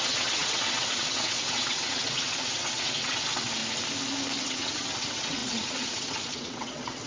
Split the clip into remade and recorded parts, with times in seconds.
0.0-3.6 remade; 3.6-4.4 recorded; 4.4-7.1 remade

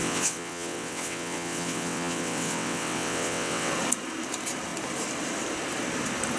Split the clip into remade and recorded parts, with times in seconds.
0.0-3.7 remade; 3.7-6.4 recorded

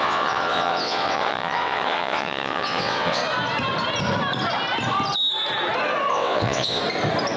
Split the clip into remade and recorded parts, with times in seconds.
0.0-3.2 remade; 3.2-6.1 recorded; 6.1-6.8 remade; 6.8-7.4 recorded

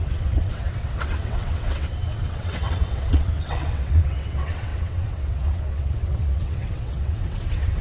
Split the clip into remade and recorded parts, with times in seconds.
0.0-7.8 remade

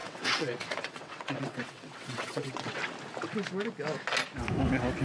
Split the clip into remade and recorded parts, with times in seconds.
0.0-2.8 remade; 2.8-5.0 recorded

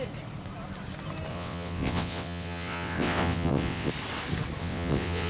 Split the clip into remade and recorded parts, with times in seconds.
0.0-1.3 recorded; 1.3-3.9 remade; 3.9-4.6 recorded; 4.6-5.3 remade

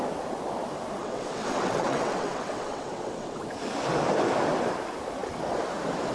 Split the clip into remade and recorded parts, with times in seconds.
0.0-1.0 recorded; 1.0-3.4 remade; 3.4-6.1 recorded

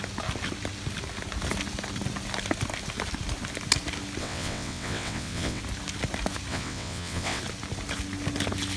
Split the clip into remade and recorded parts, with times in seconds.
0.0-4.2 recorded; 4.2-5.6 remade; 5.6-6.5 recorded; 6.5-7.4 remade; 7.4-8.8 recorded